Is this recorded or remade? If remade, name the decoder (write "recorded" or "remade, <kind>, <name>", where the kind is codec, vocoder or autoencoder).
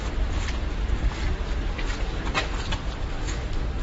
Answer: recorded